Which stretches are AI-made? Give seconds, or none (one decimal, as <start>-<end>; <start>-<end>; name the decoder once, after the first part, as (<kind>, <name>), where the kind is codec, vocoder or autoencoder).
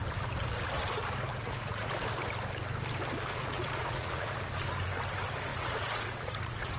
1.3-1.9 (vocoder, Vocos); 3.3-4.4; 5.5-6.8